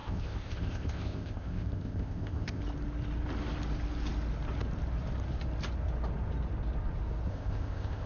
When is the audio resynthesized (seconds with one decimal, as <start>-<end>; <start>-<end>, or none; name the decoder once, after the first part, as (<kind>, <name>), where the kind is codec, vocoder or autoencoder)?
0.0-2.6 (codec, ZipCodec); 7.3-8.1